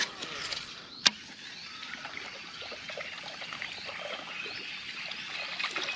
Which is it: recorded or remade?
recorded